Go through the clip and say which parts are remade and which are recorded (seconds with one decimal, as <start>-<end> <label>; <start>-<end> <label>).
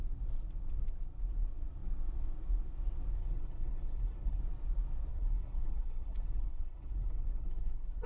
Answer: 0.0-3.2 recorded; 3.2-4.4 remade; 4.4-5.1 recorded; 5.1-8.1 remade